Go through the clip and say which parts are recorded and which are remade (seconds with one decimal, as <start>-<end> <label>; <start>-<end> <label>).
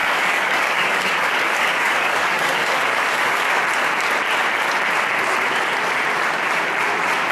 0.0-3.6 remade; 3.6-7.3 recorded